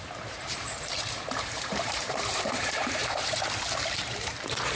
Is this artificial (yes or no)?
yes